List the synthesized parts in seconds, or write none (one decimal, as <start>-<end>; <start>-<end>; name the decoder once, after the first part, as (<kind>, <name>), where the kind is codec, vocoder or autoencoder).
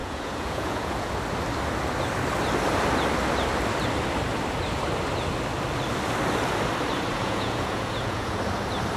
0.0-1.1 (vocoder, Vocos); 7.1-8.4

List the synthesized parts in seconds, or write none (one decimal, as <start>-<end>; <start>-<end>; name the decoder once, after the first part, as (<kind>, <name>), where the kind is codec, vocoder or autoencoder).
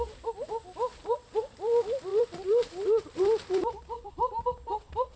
2.1-4.1 (vocoder, BigVGAN v2)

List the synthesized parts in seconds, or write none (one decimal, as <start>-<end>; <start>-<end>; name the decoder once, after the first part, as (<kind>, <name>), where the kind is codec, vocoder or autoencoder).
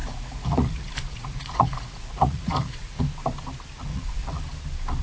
0.0-3.0 (vocoder, Vocos); 3.9-4.4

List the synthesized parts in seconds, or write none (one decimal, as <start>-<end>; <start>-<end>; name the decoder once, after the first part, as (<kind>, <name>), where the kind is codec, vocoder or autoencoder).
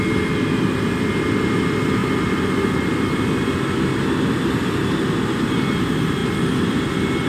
2.0-5.1 (vocoder, BigVGAN v2)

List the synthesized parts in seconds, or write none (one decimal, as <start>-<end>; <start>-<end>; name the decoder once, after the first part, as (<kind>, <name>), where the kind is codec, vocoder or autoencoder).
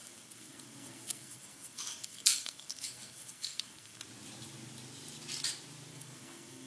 0.0-4.0 (codec, SNAC); 5.9-6.7